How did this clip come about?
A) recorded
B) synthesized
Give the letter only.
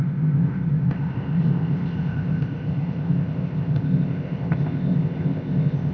B